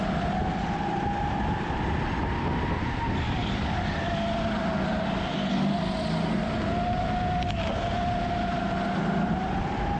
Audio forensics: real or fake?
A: real